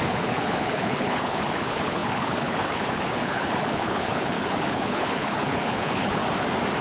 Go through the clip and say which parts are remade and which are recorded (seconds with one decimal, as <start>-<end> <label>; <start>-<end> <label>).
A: 0.0-6.2 remade; 6.2-6.8 recorded

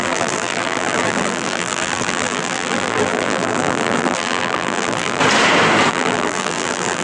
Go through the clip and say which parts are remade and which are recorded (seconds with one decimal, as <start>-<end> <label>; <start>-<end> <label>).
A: 0.0-5.2 remade; 5.2-5.9 recorded; 5.9-7.0 remade

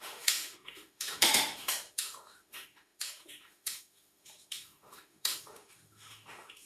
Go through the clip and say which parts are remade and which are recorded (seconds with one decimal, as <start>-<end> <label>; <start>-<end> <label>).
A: 0.0-6.7 remade

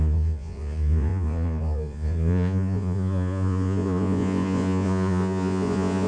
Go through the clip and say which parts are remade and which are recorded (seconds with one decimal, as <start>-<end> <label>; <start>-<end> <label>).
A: 0.0-6.1 remade

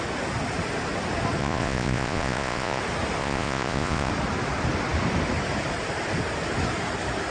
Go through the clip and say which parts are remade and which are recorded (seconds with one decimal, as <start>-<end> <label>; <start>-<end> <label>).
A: 0.0-1.4 recorded; 1.4-2.8 remade; 2.8-3.2 recorded; 3.2-4.1 remade; 4.1-7.3 recorded

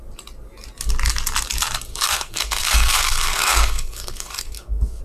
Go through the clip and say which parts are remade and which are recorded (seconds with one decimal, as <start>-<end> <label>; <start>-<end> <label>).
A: 0.0-1.9 recorded; 1.9-5.0 remade